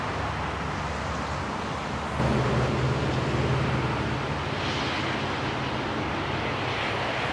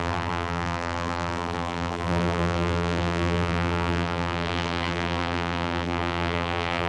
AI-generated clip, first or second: second